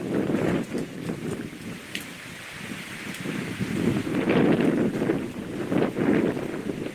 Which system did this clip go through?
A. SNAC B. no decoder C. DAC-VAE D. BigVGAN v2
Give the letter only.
B